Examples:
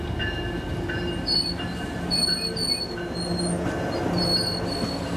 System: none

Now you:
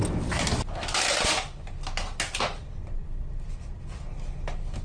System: none